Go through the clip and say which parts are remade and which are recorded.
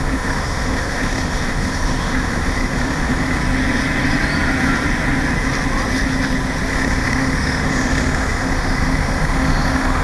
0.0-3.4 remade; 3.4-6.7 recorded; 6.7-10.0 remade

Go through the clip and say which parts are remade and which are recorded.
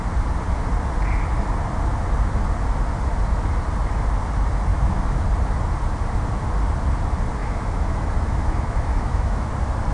0.0-4.7 recorded; 4.7-5.2 remade; 5.2-7.4 recorded; 7.4-9.5 remade; 9.5-9.9 recorded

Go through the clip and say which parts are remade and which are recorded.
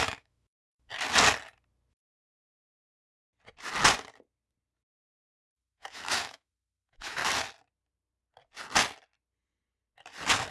0.0-0.9 remade; 0.9-1.9 recorded; 1.9-2.5 remade; 2.5-5.2 recorded; 5.2-7.2 remade; 7.2-10.5 recorded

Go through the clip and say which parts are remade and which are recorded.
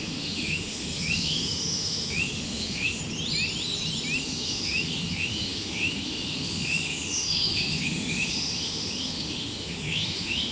0.0-3.0 remade; 3.0-4.2 recorded; 4.2-10.5 remade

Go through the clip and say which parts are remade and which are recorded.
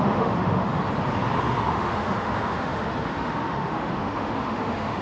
0.0-0.8 remade; 0.8-1.4 recorded; 1.4-5.0 remade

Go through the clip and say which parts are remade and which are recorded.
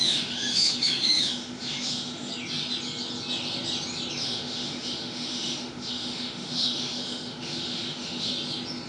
0.0-2.3 remade; 2.3-4.2 recorded; 4.2-8.3 remade; 8.3-8.9 recorded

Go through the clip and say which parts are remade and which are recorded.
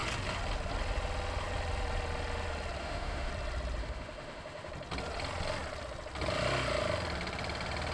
0.0-2.8 recorded; 2.8-3.3 remade; 3.3-3.8 recorded; 3.8-4.7 remade; 4.7-7.9 recorded